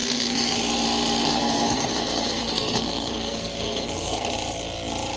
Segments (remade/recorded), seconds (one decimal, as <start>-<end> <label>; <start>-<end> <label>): 0.0-0.6 remade; 0.6-1.2 recorded; 1.2-4.3 remade; 4.3-5.2 recorded